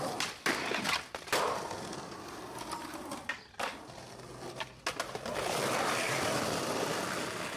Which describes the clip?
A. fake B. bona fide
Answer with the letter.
B